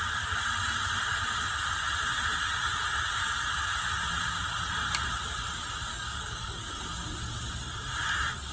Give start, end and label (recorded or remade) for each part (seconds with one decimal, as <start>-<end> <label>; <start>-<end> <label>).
0.0-5.9 recorded; 5.9-6.8 remade; 6.8-8.5 recorded